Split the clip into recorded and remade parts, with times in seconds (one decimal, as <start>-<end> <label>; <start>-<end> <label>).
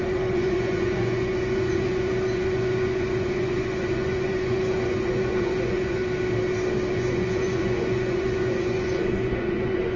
0.0-6.0 remade; 6.0-6.9 recorded; 6.9-10.0 remade